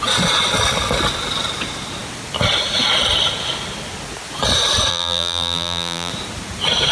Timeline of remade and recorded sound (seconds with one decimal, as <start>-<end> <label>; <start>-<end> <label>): 0.0-4.9 recorded; 4.9-6.1 remade; 6.1-6.9 recorded